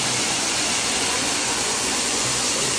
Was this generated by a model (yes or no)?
yes